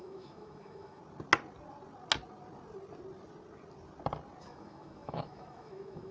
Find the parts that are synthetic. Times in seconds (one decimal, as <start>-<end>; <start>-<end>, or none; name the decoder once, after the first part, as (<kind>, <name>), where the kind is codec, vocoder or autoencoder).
0.0-1.0 (autoencoder, DAC-VAE); 4.4-6.1